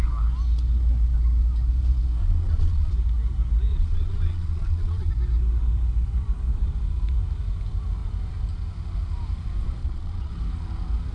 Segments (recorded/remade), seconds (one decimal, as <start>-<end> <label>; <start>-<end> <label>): 0.0-2.2 recorded; 2.2-2.9 remade; 2.9-3.7 recorded; 3.7-5.1 remade; 5.1-9.8 recorded; 9.8-10.3 remade; 10.3-11.1 recorded